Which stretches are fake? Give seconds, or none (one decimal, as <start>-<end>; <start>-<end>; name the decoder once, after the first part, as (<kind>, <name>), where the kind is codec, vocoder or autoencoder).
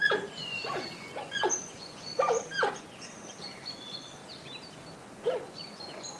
0.0-2.1 (vocoder, Vocos); 2.7-4.2; 5.0-6.2